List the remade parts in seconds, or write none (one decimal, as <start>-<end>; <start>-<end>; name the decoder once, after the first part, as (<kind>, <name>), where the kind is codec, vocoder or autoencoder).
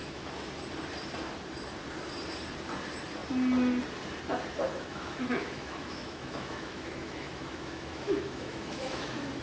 0.0-0.5 (autoencoder, DAC-VAE); 4.7-9.4